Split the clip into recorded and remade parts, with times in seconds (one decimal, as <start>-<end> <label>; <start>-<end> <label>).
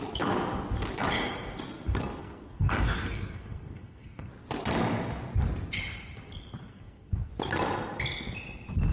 0.0-2.2 recorded; 2.2-4.3 remade; 4.3-6.7 recorded; 6.7-7.3 remade; 7.3-8.9 recorded